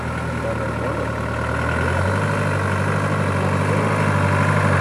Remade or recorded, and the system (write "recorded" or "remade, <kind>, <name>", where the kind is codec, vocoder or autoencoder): recorded